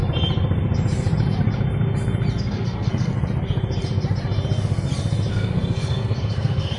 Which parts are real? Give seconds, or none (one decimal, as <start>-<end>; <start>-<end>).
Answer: 0.0-2.4; 3.1-5.3